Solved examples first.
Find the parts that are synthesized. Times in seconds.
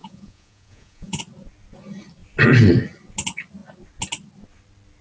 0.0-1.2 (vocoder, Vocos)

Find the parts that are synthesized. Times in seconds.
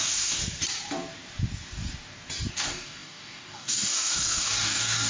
0.0-0.4 (codec, DAC); 2.5-5.1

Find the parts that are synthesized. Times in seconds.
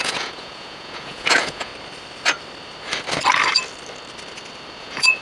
0.0-1.7 (vocoder, Vocos); 4.8-5.2